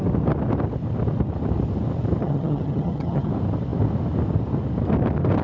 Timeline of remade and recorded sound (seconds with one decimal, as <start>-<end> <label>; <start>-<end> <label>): 0.0-2.2 recorded; 2.2-3.3 remade; 3.3-5.4 recorded